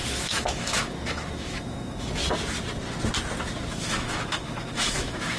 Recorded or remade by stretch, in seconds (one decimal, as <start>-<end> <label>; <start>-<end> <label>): 0.0-2.2 remade; 2.2-3.7 recorded; 3.7-5.4 remade